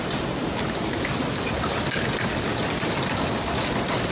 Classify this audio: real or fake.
real